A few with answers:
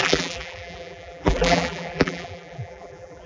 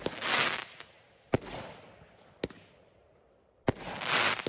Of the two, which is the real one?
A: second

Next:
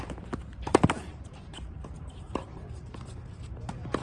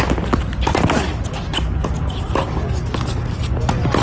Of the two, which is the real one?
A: second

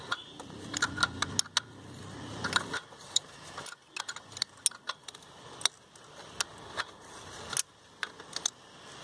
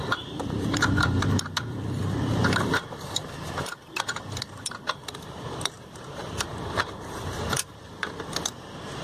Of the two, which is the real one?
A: first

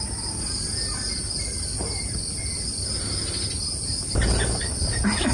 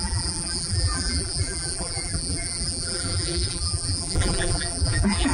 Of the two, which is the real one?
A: first